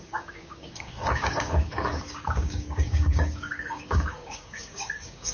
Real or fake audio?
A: fake